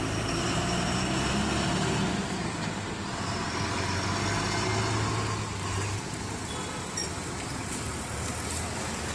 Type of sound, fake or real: real